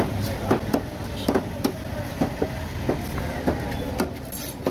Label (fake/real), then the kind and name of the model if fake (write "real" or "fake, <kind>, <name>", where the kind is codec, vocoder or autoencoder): real